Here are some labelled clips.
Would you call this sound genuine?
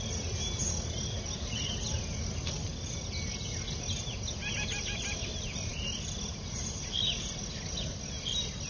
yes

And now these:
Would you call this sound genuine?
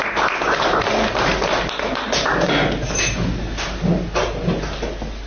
yes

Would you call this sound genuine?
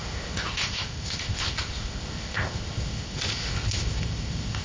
no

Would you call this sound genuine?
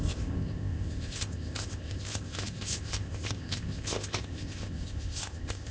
no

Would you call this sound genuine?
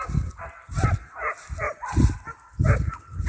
yes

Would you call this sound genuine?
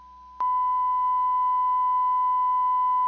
yes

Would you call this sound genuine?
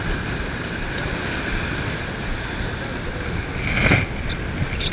yes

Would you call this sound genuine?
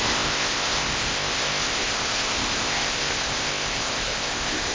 no